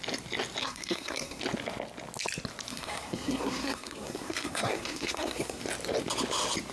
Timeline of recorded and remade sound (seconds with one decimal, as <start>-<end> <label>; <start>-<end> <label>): 0.0-0.6 recorded; 0.6-1.4 remade; 1.4-2.7 recorded; 2.7-5.6 remade; 5.6-6.7 recorded